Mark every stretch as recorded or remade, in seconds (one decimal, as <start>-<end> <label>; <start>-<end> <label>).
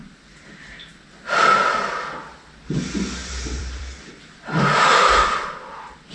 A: 0.0-0.9 remade; 0.9-2.2 recorded; 2.2-6.1 remade